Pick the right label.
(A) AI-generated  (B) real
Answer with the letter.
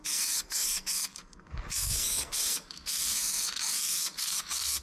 A